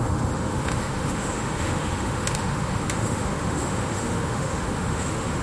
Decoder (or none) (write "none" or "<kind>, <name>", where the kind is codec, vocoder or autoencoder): autoencoder, DAC-VAE